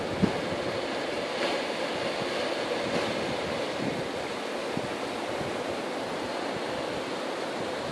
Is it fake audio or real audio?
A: real